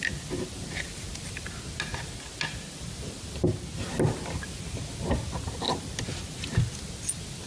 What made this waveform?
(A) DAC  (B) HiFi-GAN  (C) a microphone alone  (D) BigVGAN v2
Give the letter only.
C